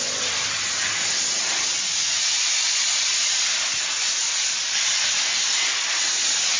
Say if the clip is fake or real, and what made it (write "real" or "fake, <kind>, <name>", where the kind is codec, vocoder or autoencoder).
real